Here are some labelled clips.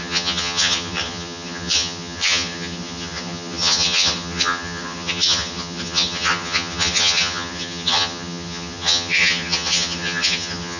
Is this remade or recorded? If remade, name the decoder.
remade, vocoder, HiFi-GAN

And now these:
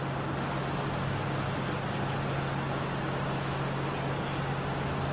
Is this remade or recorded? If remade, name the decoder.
recorded